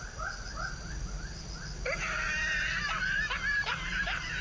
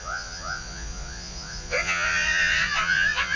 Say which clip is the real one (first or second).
first